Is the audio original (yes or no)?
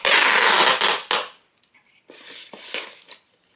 yes